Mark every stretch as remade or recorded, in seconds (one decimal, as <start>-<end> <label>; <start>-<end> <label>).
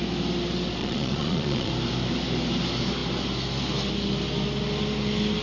0.0-0.8 recorded; 0.8-1.7 remade; 1.7-5.4 recorded